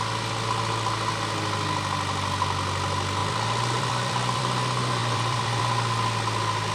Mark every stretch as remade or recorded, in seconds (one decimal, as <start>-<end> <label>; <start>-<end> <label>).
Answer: 0.0-3.2 recorded; 3.2-4.4 remade; 4.4-5.0 recorded; 5.0-5.6 remade; 5.6-6.7 recorded